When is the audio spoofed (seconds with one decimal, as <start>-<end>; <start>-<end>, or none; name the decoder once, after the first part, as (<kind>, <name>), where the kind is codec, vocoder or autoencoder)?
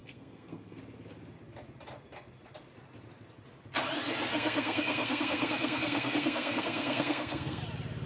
0.0-0.8 (codec, SNAC); 4.3-7.6